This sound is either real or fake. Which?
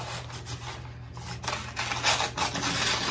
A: real